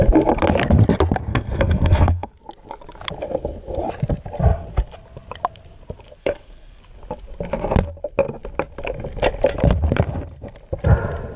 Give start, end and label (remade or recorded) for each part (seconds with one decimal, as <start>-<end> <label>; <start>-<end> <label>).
0.0-1.3 recorded; 1.3-2.3 remade; 2.3-6.2 recorded; 6.2-6.8 remade; 6.8-11.4 recorded